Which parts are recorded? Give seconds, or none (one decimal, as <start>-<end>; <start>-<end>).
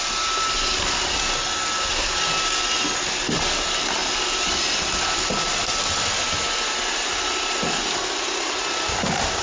0.0-1.9; 2.9-4.0; 5.2-9.4